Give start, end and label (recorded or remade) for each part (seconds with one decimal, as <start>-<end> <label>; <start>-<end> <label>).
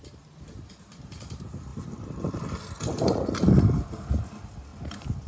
0.0-5.3 recorded